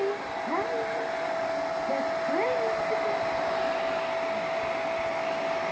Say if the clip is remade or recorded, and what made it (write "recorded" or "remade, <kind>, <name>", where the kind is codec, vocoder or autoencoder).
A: recorded